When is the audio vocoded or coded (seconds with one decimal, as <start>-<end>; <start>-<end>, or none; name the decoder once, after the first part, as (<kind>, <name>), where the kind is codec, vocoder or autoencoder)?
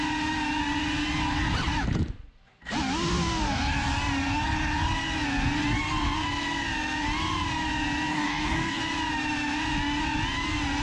8.1-8.8 (codec, DAC)